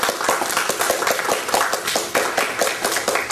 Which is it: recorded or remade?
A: recorded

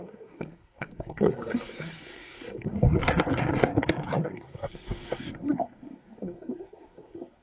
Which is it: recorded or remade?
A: remade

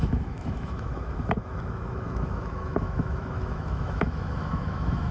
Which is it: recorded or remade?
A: remade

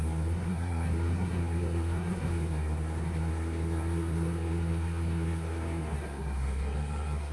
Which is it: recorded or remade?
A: remade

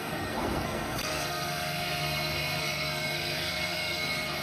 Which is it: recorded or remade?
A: remade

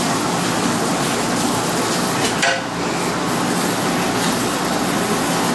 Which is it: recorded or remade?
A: recorded